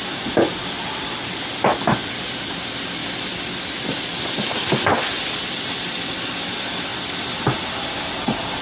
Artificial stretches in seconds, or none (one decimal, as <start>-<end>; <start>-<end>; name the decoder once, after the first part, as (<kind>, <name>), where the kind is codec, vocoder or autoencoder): none